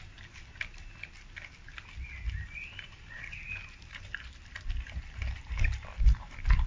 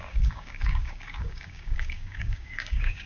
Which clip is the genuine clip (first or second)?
first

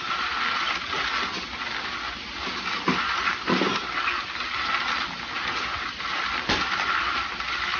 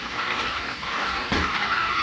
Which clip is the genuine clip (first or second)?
first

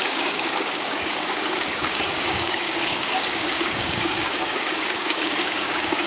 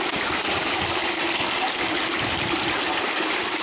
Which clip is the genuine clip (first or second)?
second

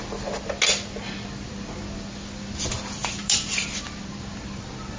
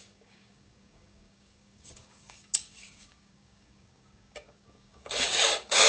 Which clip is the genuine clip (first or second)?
first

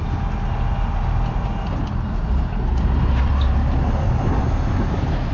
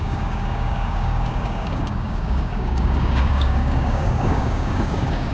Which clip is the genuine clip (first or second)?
first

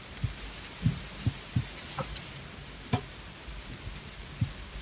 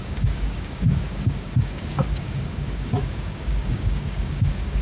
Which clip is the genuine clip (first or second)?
first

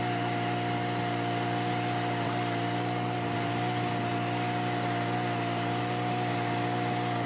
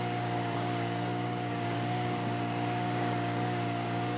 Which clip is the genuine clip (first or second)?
first